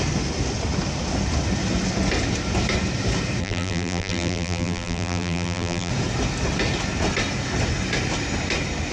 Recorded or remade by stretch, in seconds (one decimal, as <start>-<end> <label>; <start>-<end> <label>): 0.0-3.4 recorded; 3.4-5.9 remade; 5.9-8.9 recorded